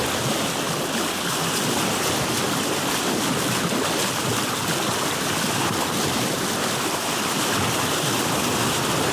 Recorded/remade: recorded